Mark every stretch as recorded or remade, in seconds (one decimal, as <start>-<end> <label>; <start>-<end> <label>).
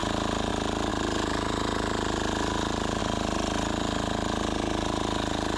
0.0-0.5 recorded; 0.5-5.6 remade